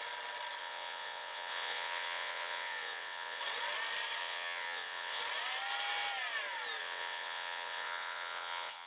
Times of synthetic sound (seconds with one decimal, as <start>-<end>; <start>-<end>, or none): 0.6-3.4; 4.2-5.2; 6.8-8.9